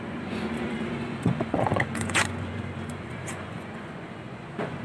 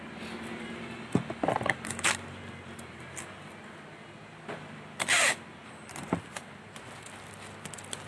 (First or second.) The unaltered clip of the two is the second